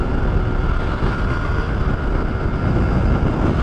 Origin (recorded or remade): recorded